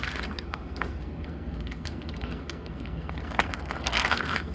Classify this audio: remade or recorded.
remade